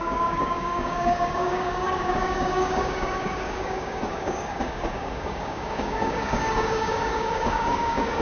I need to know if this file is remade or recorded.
remade